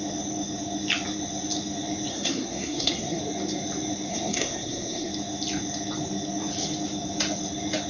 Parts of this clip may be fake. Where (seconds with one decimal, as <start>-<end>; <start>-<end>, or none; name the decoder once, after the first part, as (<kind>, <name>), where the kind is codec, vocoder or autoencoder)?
2.1-3.2 (codec, SNAC); 4.1-5.1